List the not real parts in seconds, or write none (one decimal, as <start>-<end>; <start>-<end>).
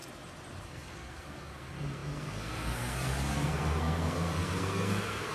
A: 0.6-5.3